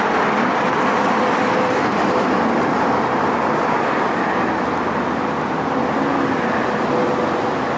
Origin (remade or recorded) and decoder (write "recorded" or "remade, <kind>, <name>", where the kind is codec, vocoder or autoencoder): recorded